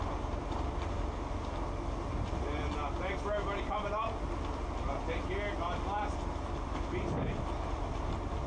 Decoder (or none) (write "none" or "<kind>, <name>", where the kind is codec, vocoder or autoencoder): none